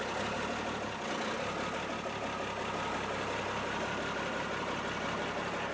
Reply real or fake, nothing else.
real